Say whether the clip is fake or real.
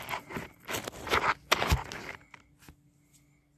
real